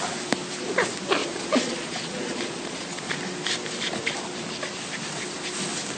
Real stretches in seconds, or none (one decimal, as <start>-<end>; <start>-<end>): 0.0-1.2; 3.1-6.0

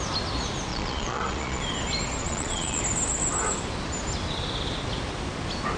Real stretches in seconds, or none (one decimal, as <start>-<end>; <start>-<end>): 0.0-0.7; 1.6-2.2; 2.8-5.8

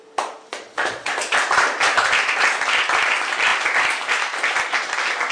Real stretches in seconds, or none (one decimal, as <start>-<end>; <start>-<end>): 0.0-0.5; 1.1-5.3

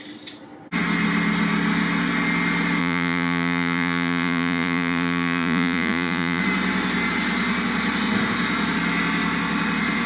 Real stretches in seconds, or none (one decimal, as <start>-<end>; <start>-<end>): 0.0-2.8; 6.4-10.1

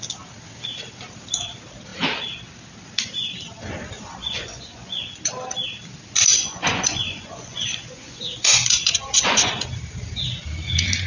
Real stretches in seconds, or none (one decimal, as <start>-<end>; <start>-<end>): 0.0-4.2; 5.2-6.4; 9.5-11.1